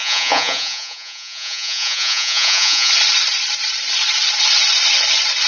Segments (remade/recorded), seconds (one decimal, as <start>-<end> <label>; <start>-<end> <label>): 0.0-2.9 remade; 2.9-5.5 recorded